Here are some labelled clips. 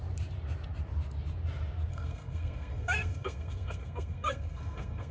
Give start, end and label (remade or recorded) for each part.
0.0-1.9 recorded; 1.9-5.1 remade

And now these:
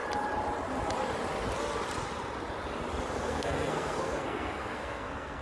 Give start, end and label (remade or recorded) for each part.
0.0-3.2 recorded; 3.2-5.4 remade

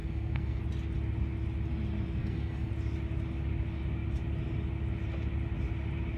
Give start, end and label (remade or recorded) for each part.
0.0-0.6 remade; 0.6-2.2 recorded; 2.2-2.7 remade; 2.7-6.2 recorded

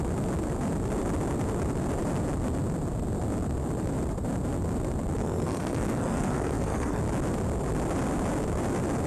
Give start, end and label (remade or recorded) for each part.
0.0-5.2 recorded; 5.2-7.0 remade; 7.0-9.1 recorded

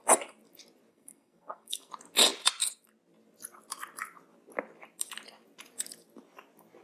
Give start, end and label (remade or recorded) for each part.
0.0-0.9 recorded; 0.9-1.9 remade; 1.9-6.8 recorded

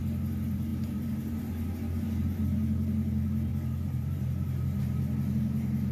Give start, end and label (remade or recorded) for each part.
0.0-5.9 recorded

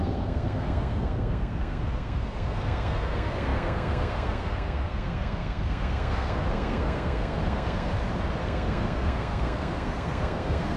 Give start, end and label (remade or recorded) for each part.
0.0-7.9 remade; 7.9-8.4 recorded; 8.4-10.8 remade

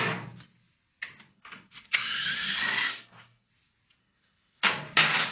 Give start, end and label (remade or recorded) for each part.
0.0-1.3 recorded; 1.3-3.5 remade; 3.5-4.0 recorded; 4.0-4.7 remade; 4.7-5.3 recorded